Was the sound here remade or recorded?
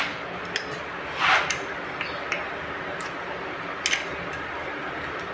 recorded